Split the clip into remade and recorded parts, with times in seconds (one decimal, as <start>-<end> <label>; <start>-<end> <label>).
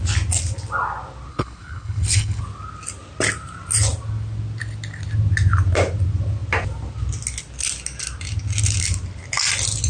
0.0-1.3 recorded; 1.3-2.4 remade; 2.4-9.9 recorded